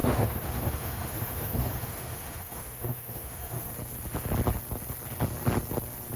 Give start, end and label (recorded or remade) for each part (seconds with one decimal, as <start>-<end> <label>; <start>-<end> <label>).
0.0-3.7 remade; 3.7-6.2 recorded